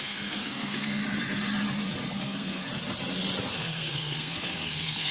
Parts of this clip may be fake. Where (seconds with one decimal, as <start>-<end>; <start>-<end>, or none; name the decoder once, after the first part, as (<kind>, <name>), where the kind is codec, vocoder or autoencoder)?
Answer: 0.0-1.0 (codec, SNAC); 2.2-2.6; 3.5-5.1